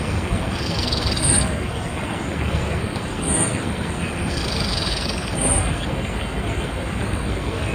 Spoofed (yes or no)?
yes